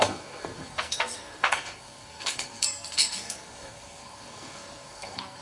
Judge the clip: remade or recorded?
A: remade